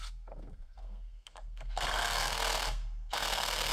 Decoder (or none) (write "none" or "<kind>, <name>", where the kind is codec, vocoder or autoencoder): codec, SNAC